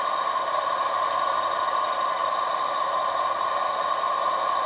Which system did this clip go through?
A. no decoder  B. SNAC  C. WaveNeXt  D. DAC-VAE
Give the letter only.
A